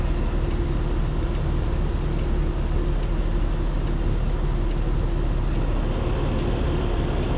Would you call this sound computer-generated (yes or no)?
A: no